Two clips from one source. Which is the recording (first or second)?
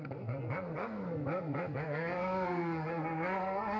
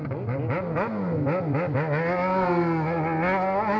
second